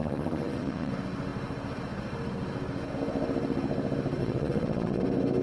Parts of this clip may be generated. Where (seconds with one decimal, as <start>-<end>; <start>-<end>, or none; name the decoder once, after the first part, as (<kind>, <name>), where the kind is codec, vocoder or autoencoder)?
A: 0.0-0.9 (vocoder, Vocos); 4.2-5.0